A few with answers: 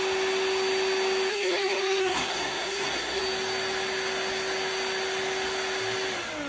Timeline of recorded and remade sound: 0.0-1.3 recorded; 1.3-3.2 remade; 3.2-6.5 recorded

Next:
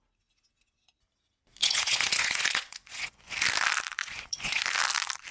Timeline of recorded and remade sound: 0.0-1.6 recorded; 1.6-3.3 remade; 3.3-4.0 recorded; 4.0-4.6 remade; 4.6-5.3 recorded

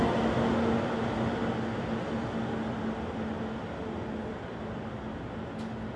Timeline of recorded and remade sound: 0.0-6.0 recorded

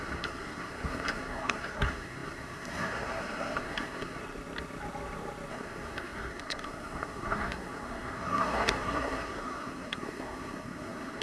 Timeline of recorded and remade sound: 0.0-4.2 remade; 4.2-5.5 recorded; 5.5-11.2 remade

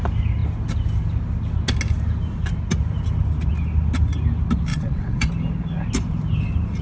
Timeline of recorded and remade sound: 0.0-4.7 recorded; 4.7-5.3 remade; 5.3-6.8 recorded

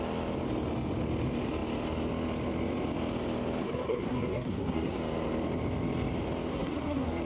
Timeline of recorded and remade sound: 0.0-3.6 recorded; 3.6-5.0 remade; 5.0-6.5 recorded; 6.5-7.2 remade